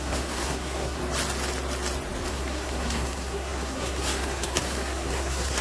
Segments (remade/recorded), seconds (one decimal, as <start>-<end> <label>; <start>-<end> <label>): 0.0-1.0 remade; 1.0-2.3 recorded; 2.3-5.6 remade

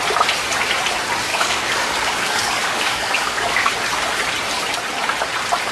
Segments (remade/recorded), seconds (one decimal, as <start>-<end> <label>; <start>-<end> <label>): 0.0-1.3 recorded; 1.3-3.7 remade; 3.7-5.7 recorded

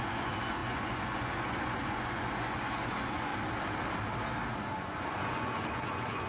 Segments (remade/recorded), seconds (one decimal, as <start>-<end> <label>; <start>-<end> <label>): 0.0-3.3 remade; 3.3-4.5 recorded; 4.5-6.3 remade